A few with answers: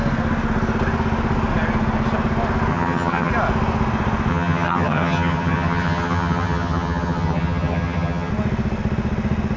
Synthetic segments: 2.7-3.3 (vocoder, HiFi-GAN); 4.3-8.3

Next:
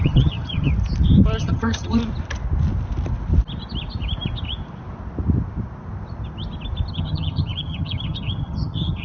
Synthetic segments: 0.0-0.7 (vocoder, HiFi-GAN); 1.4-2.0; 6.9-9.0

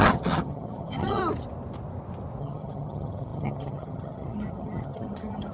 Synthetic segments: 0.0-1.2 (vocoder, HiFi-GAN); 2.4-5.5

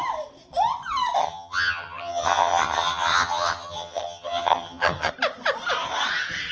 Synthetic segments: 1.2-5.1 (vocoder, HiFi-GAN)

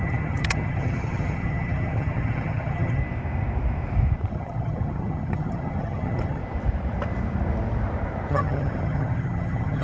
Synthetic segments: 0.0-3.0 (vocoder, HiFi-GAN); 4.3-6.4; 8.3-9.8